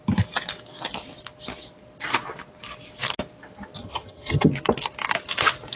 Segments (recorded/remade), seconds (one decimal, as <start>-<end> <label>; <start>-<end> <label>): 0.0-3.8 recorded; 3.8-4.5 remade; 4.5-5.8 recorded